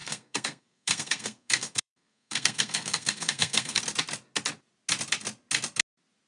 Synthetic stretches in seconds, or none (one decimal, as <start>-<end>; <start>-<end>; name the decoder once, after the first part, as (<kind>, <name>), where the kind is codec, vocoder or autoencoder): 0.0-3.8 (codec, SNAC)